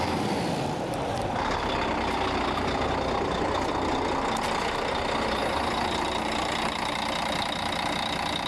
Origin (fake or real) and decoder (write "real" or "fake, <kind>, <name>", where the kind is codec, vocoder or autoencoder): real